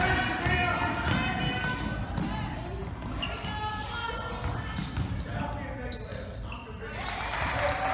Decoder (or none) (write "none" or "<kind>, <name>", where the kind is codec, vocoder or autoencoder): none